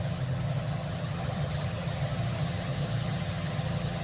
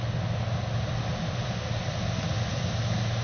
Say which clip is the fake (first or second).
first